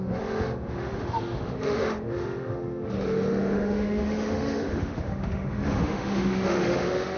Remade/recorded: remade